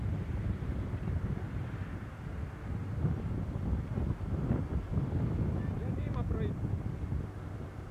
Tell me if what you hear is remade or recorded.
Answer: recorded